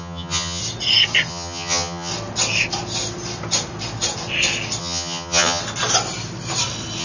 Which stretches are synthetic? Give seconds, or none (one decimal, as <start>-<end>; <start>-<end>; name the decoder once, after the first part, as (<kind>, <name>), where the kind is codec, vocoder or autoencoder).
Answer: 0.0-0.6 (vocoder, HiFi-GAN); 1.3-2.1; 4.8-5.6